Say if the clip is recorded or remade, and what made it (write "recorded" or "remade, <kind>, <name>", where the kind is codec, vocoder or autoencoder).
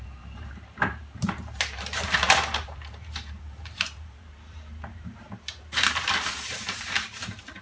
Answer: remade, vocoder, BigVGAN v2